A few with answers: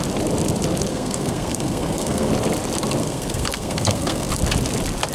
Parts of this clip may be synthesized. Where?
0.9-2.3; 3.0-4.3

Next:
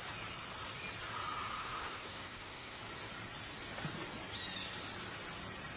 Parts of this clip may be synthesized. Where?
1.6-2.8

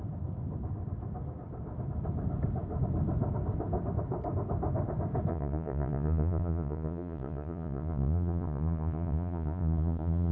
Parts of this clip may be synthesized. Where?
5.3-10.3

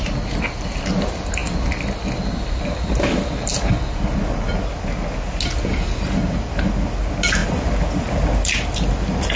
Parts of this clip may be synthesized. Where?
none

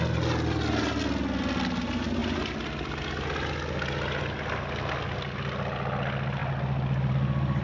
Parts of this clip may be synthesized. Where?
none